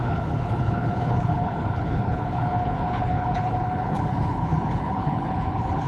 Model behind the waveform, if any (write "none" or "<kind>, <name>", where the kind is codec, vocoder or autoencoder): codec, HILCodec